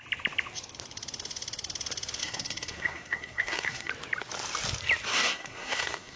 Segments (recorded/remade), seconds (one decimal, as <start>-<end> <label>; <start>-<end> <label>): 0.0-2.2 recorded; 2.2-3.9 remade; 3.9-5.1 recorded; 5.1-6.2 remade